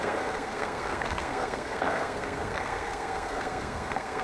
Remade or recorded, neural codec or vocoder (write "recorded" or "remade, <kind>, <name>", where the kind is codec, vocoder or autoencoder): remade, codec, SNAC